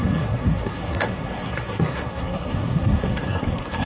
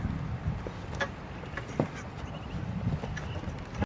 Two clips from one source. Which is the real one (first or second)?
second